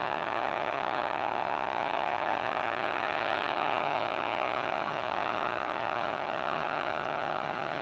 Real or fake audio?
fake